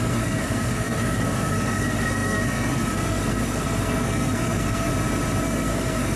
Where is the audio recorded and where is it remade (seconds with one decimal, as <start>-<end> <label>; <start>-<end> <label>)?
0.0-4.9 remade; 4.9-5.4 recorded; 5.4-6.2 remade